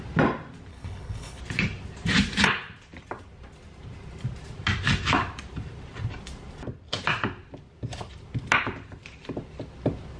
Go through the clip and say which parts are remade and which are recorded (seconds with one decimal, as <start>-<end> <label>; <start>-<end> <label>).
0.0-0.7 recorded; 0.7-1.4 remade; 1.4-10.2 recorded